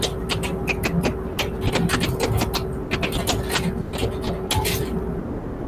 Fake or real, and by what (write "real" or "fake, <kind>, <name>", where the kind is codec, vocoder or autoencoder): real